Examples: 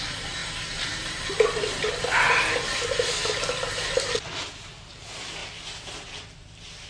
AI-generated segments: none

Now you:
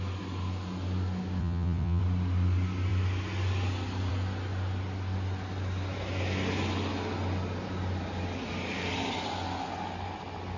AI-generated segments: 1.4-2.0 (vocoder, WaveNeXt)

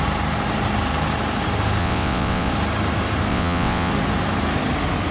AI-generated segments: 1.8-2.5 (vocoder, WaveNeXt); 3.3-3.9

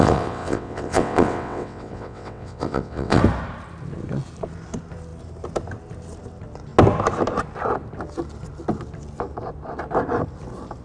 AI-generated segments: 0.0-3.2 (vocoder, WaveNeXt)

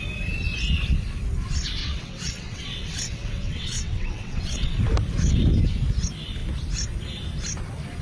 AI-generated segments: 1.8-4.8 (vocoder, WaveNeXt)